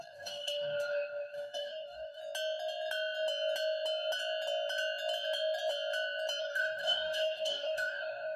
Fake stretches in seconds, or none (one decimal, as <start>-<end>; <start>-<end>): 0.0-2.2; 6.4-8.4